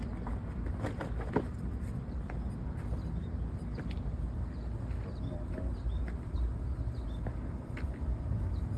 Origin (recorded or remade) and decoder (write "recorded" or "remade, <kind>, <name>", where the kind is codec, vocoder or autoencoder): recorded